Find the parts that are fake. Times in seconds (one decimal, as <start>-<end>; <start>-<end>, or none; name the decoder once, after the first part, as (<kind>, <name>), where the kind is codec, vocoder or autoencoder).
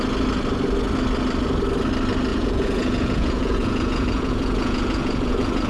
2.3-5.7 (vocoder, Vocos)